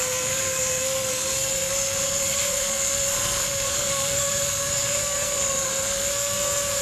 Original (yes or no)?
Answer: no